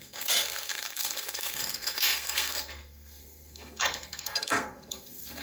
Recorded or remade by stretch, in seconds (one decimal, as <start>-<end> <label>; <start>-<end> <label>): 0.0-5.4 remade

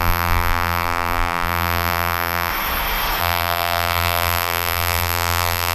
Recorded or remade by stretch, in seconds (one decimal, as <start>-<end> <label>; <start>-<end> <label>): 0.0-2.5 remade; 2.5-3.2 recorded; 3.2-5.7 remade

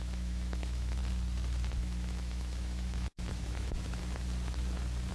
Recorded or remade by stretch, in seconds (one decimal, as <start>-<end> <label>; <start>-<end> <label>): 0.0-1.0 remade; 1.0-1.8 recorded; 1.8-4.0 remade; 4.0-5.1 recorded

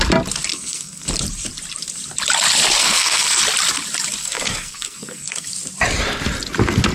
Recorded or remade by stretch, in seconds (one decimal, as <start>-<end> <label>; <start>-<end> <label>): 0.0-0.5 recorded; 0.5-1.1 remade; 1.1-2.8 recorded; 2.8-3.4 remade; 3.4-4.2 recorded; 4.2-5.5 remade; 5.5-6.9 recorded

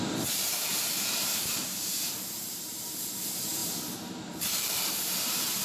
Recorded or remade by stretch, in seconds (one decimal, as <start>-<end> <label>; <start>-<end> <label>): 0.0-5.6 remade

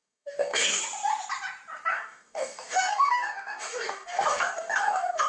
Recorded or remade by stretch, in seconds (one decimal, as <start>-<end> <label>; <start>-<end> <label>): 0.0-0.8 remade; 0.8-1.9 recorded; 1.9-5.3 remade